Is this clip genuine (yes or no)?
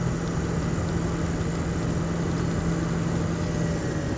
yes